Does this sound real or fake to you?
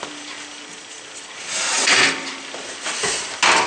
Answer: real